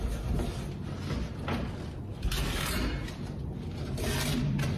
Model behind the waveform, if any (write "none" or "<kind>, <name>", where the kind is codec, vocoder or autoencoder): none